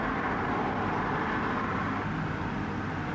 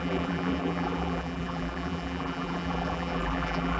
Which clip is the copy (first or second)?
second